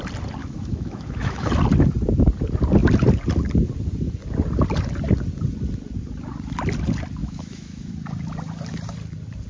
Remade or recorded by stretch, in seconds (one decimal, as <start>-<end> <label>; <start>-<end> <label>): 0.0-0.4 recorded; 0.4-1.5 remade; 1.5-7.2 recorded; 7.2-7.9 remade; 7.9-9.5 recorded